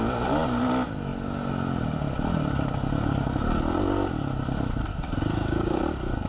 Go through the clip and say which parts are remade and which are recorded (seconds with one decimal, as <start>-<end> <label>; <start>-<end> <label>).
0.0-4.9 recorded; 4.9-5.8 remade; 5.8-6.3 recorded